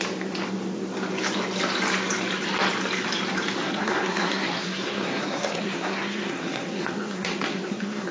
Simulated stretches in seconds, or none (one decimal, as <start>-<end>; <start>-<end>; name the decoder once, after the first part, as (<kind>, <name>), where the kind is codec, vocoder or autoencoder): 3.6-8.1 (codec, SNAC)